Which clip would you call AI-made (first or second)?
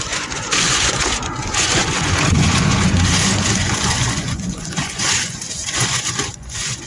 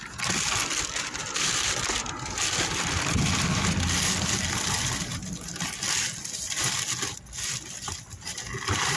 first